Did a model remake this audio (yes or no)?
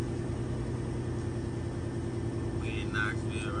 no